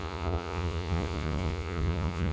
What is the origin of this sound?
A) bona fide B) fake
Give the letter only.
B